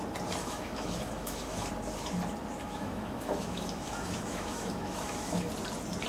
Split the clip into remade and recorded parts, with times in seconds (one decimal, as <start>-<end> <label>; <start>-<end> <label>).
0.0-0.4 recorded; 0.4-1.7 remade; 1.7-2.6 recorded; 2.6-5.5 remade; 5.5-6.1 recorded